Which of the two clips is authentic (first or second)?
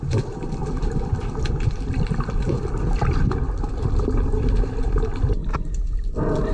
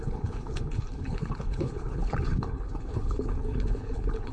first